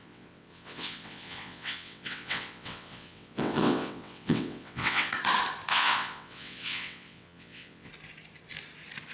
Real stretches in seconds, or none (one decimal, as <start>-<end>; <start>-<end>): 5.1-5.7; 7.9-9.1